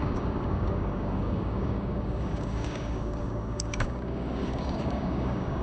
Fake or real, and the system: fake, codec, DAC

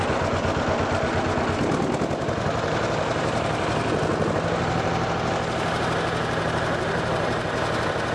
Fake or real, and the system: real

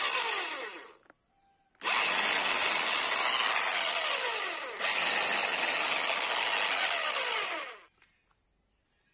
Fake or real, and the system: real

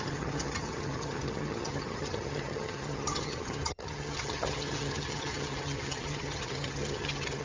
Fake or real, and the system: fake, vocoder, HiFi-GAN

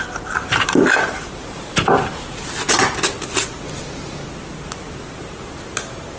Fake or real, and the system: real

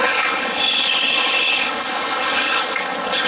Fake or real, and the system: fake, codec, HILCodec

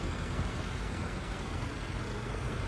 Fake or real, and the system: fake, codec, SNAC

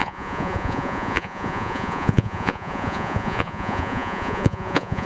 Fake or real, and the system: fake, vocoder, Vocos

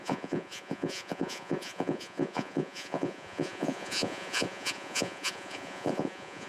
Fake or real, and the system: fake, vocoder, Vocos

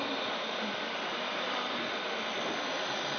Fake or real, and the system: real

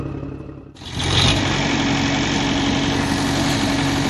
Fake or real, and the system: real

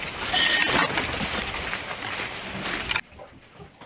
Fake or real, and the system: real